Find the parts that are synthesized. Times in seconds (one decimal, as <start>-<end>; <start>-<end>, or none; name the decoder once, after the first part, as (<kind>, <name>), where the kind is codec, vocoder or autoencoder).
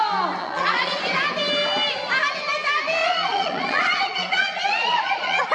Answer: 0.4-1.0 (vocoder, Vocos); 3.0-5.5